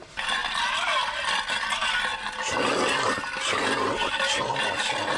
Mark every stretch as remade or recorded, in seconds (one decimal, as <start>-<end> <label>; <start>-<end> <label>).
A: 0.0-0.4 recorded; 0.4-1.4 remade; 1.4-5.2 recorded

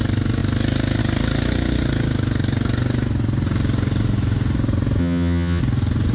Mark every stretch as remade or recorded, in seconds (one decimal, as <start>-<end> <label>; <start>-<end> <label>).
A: 0.0-5.0 recorded; 5.0-5.6 remade; 5.6-6.1 recorded

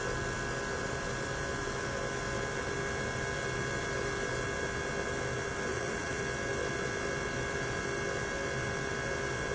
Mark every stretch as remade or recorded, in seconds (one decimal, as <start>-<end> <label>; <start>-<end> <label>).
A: 0.0-5.7 recorded; 5.7-6.2 remade; 6.2-9.5 recorded

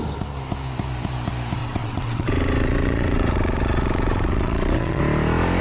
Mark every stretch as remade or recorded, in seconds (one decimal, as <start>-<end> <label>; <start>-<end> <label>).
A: 0.0-1.6 recorded; 1.6-5.0 remade; 5.0-5.6 recorded

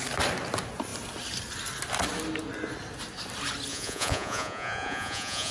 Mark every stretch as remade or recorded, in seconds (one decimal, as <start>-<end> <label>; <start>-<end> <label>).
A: 0.0-3.7 recorded; 3.7-5.5 remade